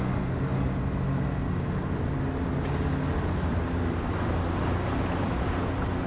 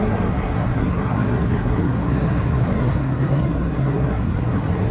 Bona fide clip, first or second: first